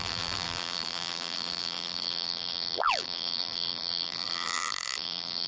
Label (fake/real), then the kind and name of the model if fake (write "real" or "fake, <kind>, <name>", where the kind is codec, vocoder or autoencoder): fake, vocoder, BigVGAN v2